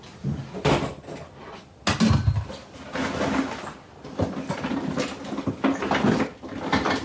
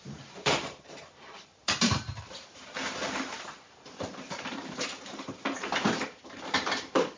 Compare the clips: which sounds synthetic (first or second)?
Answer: second